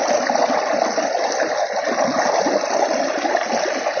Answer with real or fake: real